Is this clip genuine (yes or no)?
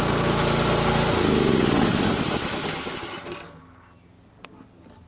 yes